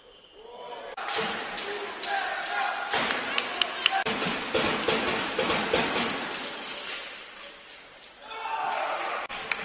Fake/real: real